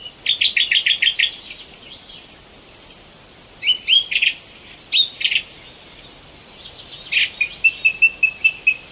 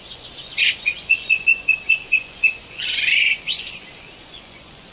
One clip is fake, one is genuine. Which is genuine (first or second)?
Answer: first